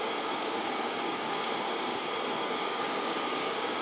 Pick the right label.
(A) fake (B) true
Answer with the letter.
A